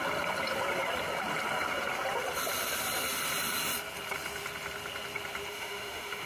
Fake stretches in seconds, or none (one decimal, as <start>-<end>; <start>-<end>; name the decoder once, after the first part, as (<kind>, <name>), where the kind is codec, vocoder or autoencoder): 5.5-6.3 (autoencoder, DAC-VAE)